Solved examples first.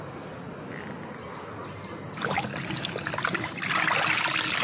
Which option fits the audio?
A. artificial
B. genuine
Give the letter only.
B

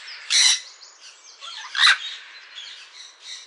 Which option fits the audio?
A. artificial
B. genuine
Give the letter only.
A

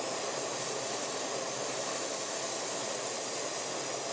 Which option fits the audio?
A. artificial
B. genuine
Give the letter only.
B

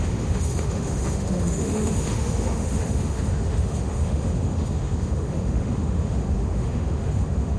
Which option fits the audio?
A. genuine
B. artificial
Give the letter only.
B